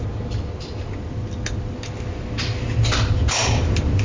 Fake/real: real